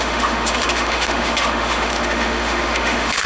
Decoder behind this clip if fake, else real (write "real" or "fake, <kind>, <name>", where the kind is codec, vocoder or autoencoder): fake, autoencoder, DAC-VAE